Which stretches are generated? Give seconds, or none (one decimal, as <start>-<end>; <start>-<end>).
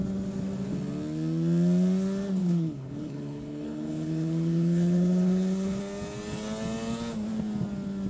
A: 2.4-5.8